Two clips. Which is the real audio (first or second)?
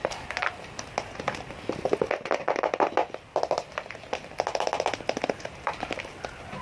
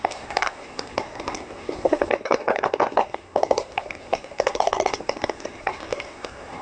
first